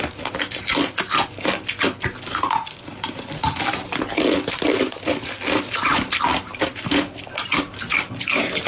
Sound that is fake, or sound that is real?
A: real